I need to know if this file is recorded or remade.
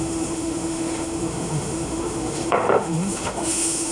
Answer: remade